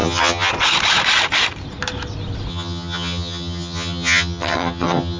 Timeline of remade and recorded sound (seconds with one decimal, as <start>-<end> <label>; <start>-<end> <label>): 0.0-0.5 remade; 0.5-2.5 recorded; 2.5-5.2 remade